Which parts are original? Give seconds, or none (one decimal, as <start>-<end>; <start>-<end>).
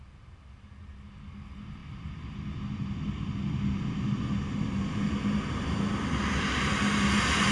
0.0-7.5